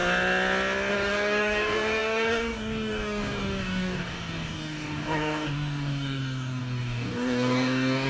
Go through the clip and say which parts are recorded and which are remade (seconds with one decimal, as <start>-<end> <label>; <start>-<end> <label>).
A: 0.0-0.9 recorded; 0.9-8.1 remade